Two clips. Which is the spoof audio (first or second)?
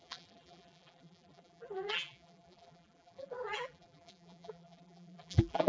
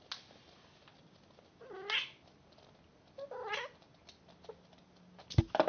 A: first